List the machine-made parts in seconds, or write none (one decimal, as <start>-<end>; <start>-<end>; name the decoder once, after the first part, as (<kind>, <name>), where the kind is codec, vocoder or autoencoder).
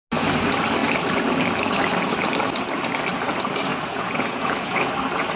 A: 3.7-4.9 (vocoder, Vocos)